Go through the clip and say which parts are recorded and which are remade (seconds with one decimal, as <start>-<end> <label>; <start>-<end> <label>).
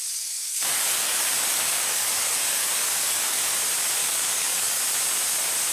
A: 0.0-3.4 remade; 3.4-4.0 recorded; 4.0-4.8 remade; 4.8-5.7 recorded